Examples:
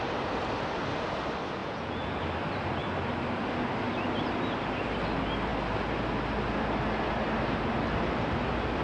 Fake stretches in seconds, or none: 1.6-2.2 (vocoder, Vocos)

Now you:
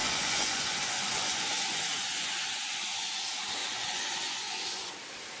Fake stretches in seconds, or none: 0.0-3.2 (vocoder, Vocos); 3.6-4.9

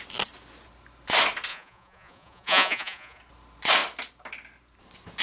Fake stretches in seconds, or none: 1.5-3.2 (vocoder, Vocos)